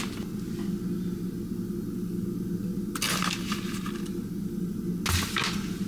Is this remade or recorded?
recorded